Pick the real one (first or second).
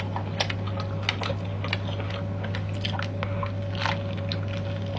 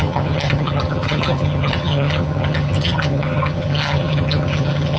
first